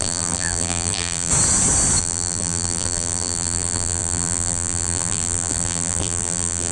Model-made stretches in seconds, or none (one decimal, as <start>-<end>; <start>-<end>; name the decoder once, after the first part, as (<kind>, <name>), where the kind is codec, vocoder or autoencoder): 0.0-1.3 (vocoder, BigVGAN v2); 2.0-6.7